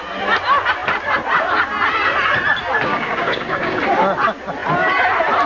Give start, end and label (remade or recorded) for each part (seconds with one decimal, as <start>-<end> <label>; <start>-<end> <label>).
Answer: 0.0-2.9 recorded; 2.9-3.8 remade; 3.8-5.5 recorded

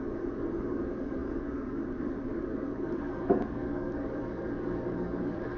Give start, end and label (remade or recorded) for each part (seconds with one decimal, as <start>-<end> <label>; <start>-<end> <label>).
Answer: 0.0-5.6 remade